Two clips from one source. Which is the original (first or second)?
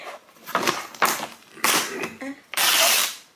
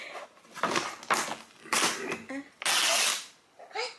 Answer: second